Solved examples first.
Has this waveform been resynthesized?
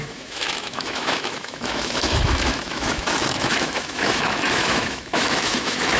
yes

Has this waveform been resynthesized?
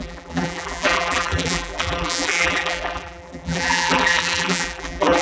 yes